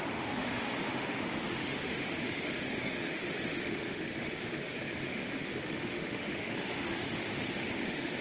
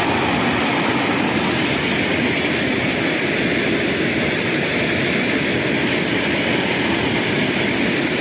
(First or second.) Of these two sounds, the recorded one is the second